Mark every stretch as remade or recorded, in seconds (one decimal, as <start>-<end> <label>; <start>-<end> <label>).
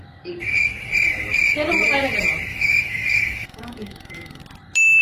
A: 0.0-2.5 recorded; 2.5-4.4 remade; 4.4-5.0 recorded